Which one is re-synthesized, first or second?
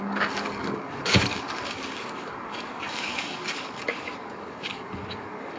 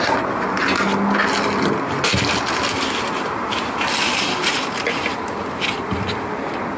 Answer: first